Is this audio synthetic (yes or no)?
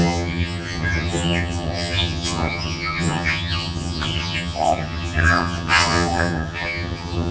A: yes